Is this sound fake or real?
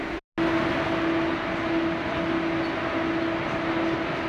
real